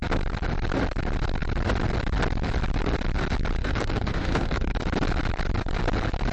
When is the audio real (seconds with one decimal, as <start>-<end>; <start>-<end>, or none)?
0.0-3.6; 4.8-6.3